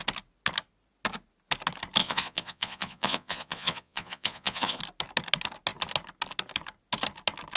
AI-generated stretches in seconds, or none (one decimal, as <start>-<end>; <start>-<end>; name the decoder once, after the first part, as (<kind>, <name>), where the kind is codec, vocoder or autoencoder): 2.0-4.8 (vocoder, Vocos)